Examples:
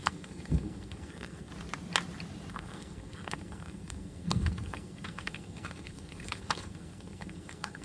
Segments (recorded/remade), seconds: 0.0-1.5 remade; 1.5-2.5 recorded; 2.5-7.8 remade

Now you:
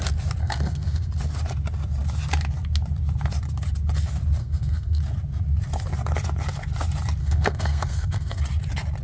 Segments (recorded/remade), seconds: 0.0-0.4 recorded; 0.4-1.1 remade; 1.1-4.4 recorded; 4.4-5.0 remade; 5.0-7.2 recorded; 7.2-8.4 remade; 8.4-9.0 recorded

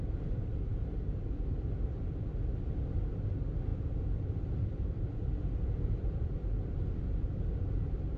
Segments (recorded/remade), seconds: 0.0-3.7 recorded; 3.7-6.2 remade; 6.2-8.2 recorded